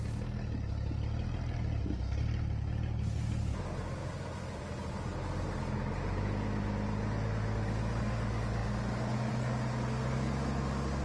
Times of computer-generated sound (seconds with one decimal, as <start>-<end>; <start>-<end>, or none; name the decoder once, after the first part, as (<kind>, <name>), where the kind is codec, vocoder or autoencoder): none